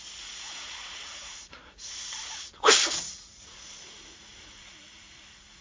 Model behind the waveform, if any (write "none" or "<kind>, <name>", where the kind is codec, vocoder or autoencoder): vocoder, Vocos